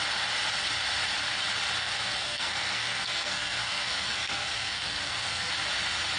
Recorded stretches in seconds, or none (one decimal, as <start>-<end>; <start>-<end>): 0.0-1.8; 5.5-6.2